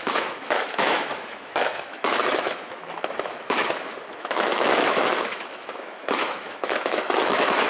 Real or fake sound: fake